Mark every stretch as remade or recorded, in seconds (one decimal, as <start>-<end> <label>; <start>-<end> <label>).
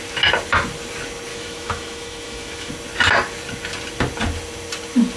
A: 0.0-1.3 recorded; 1.3-2.7 remade; 2.7-5.2 recorded